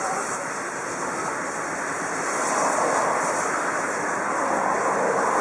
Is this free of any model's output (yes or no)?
yes